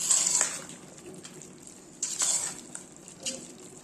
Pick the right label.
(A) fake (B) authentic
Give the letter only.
B